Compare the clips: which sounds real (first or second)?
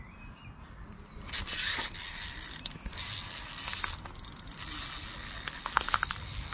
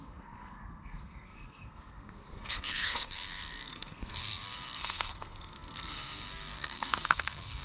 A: first